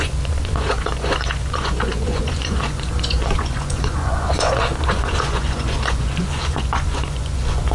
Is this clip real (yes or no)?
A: no